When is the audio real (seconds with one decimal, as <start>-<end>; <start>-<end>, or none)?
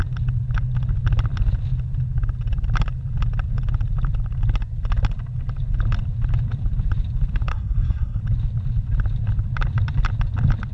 0.0-7.5; 8.2-10.7